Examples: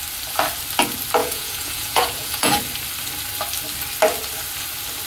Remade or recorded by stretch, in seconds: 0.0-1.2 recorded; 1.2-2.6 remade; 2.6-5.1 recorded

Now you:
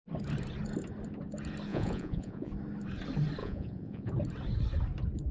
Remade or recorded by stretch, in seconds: 0.0-1.7 recorded; 1.7-2.5 remade; 2.5-3.4 recorded; 3.4-4.1 remade; 4.1-5.3 recorded